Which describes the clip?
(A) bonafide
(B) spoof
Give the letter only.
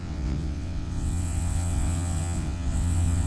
B